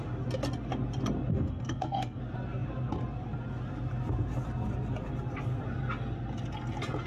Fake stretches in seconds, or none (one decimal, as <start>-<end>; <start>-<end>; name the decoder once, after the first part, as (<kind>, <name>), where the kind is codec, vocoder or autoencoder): 1.3-2.2 (codec, SNAC)